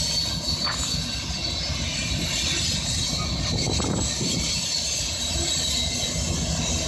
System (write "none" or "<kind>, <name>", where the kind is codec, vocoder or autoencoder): none